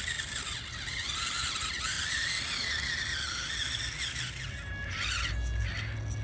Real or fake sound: real